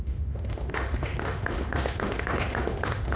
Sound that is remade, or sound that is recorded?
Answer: remade